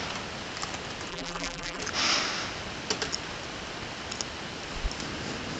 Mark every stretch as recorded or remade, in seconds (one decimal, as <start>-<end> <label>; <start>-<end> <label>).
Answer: 0.0-1.1 recorded; 1.1-1.8 remade; 1.8-5.6 recorded